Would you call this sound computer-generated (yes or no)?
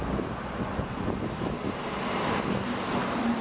no